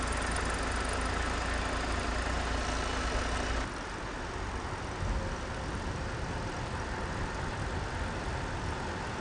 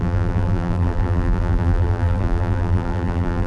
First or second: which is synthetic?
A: second